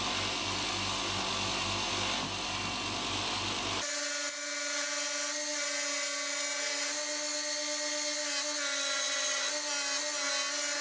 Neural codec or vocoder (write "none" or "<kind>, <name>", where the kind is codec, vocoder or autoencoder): none